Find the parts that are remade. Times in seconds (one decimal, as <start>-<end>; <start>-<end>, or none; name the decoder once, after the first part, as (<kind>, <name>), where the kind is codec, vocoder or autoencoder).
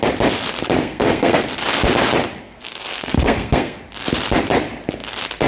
0.8-1.4 (codec, SNAC); 2.4-3.8